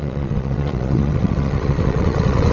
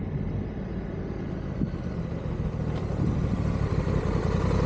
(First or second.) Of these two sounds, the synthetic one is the first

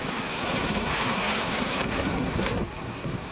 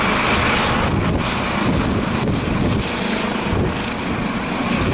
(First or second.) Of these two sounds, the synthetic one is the first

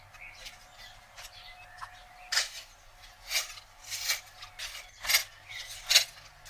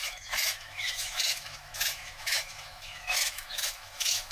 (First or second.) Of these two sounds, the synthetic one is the second